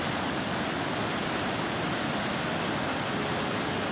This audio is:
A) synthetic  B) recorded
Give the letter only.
B